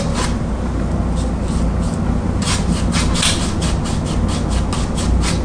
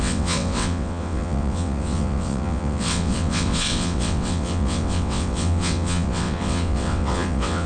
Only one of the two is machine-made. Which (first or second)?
second